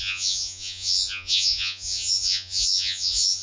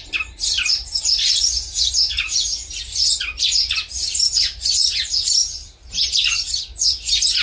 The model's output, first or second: first